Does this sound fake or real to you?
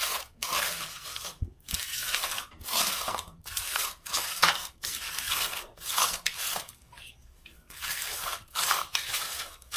fake